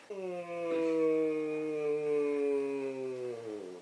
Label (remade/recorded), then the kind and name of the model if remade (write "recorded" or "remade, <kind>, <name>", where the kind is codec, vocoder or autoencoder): recorded